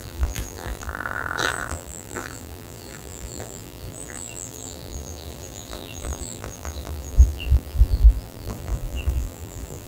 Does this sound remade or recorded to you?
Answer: remade